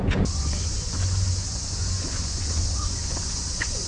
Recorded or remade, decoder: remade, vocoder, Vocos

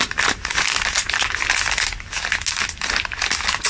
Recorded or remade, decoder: recorded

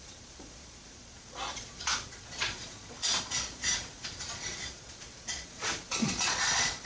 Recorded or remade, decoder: remade, vocoder, Vocos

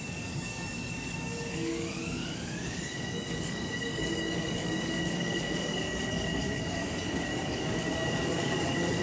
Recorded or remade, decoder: remade, codec, DAC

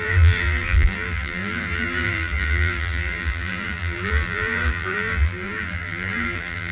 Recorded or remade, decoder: remade, vocoder, BigVGAN v2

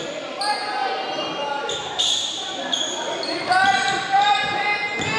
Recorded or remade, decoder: recorded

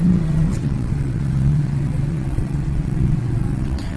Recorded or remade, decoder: remade, vocoder, WaveNeXt